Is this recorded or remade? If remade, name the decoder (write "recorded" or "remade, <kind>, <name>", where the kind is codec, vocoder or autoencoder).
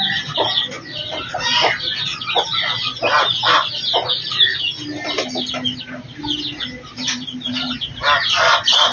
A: recorded